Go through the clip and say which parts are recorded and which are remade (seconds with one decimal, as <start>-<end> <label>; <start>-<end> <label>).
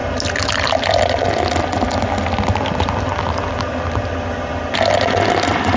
0.0-5.8 recorded